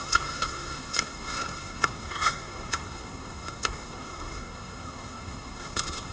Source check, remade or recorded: remade